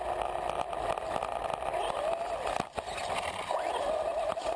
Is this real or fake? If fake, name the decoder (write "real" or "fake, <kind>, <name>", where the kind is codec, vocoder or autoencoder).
real